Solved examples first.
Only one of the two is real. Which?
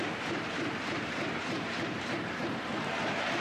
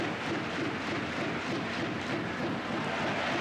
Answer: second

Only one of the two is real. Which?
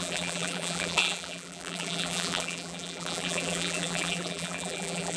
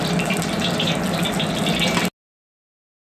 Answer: second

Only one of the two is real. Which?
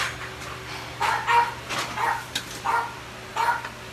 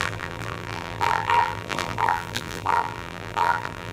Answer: first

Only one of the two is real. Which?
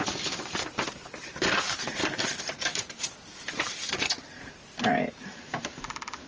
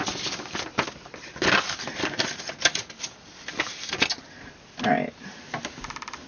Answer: second